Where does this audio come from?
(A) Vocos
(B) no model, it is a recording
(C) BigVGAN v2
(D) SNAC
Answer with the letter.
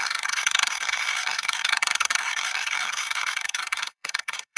D